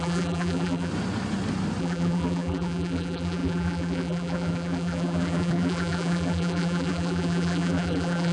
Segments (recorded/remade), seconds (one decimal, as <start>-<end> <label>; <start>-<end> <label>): 0.0-0.9 remade; 0.9-1.8 recorded; 1.8-8.3 remade